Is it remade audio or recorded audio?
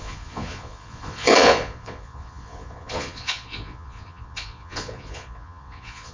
remade